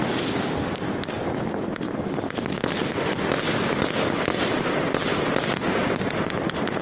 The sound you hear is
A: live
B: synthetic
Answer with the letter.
A